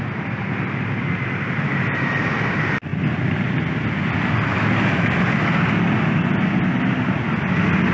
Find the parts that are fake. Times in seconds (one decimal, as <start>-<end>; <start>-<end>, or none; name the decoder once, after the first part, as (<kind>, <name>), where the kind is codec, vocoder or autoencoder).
none